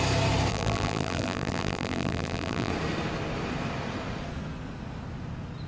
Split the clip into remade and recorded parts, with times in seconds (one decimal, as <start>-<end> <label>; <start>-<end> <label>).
0.0-0.5 recorded; 0.5-2.7 remade; 2.7-5.7 recorded